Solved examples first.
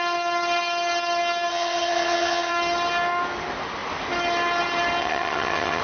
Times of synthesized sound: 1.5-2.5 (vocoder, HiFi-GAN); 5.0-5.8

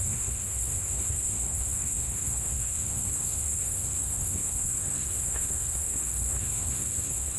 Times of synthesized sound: 0.0-7.4 (codec, SNAC)

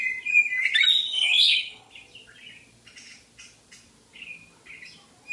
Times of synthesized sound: 1.1-1.9 (codec, HILCodec)

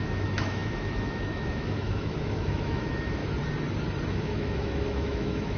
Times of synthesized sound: 0.0-3.2 (autoencoder, DAC-VAE); 4.1-5.6

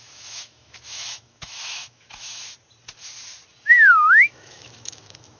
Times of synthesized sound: 0.0-2.4 (autoencoder, DAC-VAE); 3.9-5.4

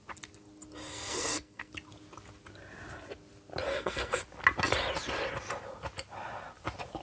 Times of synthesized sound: 0.9-1.7 (codec, SNAC); 3.7-4.2